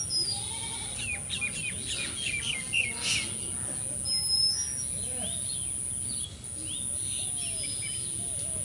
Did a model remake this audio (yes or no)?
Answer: no